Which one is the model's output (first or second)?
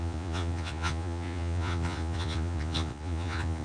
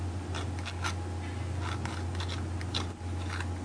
first